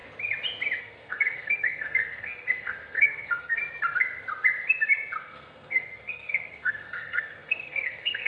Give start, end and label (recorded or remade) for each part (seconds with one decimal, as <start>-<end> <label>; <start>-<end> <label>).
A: 0.0-0.8 recorded; 0.8-3.6 remade; 3.6-5.2 recorded; 5.2-8.3 remade